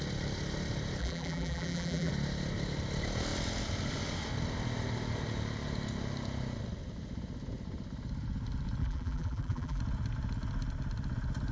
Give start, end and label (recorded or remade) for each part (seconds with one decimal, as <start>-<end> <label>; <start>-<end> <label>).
0.0-1.0 recorded; 1.0-2.1 remade; 2.1-8.8 recorded; 8.8-9.8 remade; 9.8-11.5 recorded